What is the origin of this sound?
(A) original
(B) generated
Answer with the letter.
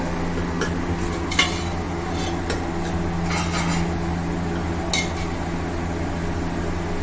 A